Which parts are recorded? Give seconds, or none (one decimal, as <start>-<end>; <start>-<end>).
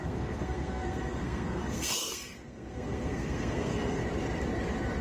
4.0-5.0